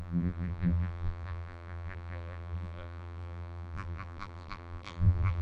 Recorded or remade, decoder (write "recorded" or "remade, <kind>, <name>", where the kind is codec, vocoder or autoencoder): remade, vocoder, BigVGAN v2